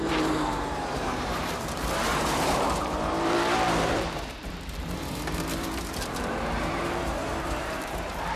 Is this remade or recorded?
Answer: remade